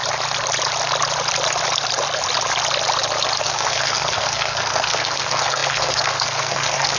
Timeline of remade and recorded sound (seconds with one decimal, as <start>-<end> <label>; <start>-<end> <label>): 0.0-3.4 recorded; 3.4-7.0 remade